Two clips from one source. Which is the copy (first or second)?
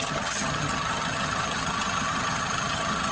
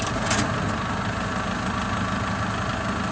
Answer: first